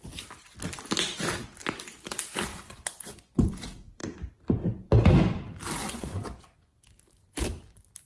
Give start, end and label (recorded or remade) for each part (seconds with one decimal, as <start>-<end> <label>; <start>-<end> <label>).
0.0-2.5 recorded; 2.5-3.5 remade; 3.5-5.8 recorded; 5.8-6.9 remade; 6.9-8.1 recorded